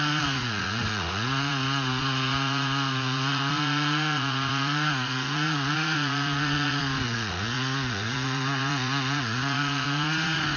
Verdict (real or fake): fake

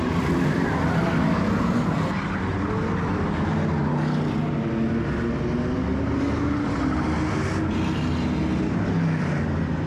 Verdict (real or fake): real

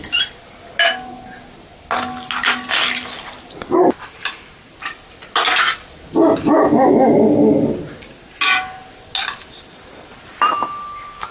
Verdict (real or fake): real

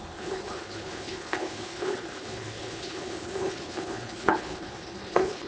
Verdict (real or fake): fake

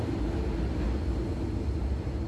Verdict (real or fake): real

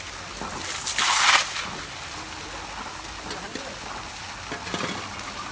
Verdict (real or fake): real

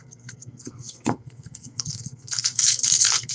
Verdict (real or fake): fake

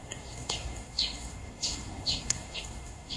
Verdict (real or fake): fake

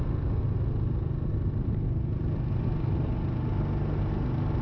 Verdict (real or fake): real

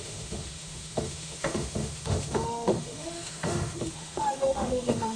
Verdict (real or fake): fake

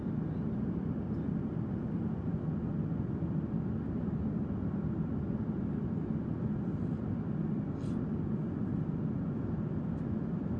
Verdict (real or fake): real